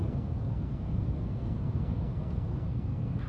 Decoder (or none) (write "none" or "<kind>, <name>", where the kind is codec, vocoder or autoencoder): codec, SNAC